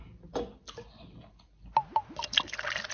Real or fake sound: real